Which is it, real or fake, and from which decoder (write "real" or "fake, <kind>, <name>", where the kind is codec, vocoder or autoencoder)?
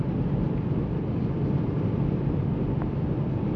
fake, vocoder, BigVGAN v2